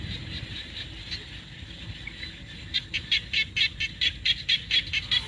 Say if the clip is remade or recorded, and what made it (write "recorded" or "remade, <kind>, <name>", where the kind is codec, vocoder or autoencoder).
recorded